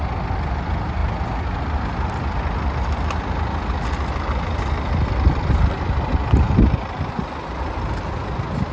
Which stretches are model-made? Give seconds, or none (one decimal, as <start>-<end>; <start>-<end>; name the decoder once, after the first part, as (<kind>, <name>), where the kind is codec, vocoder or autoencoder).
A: none